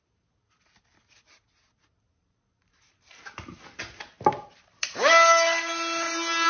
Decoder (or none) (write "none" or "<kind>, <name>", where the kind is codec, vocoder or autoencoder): none